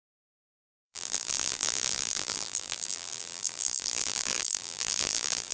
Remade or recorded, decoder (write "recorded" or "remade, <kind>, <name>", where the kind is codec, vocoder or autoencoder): remade, vocoder, BigVGAN v2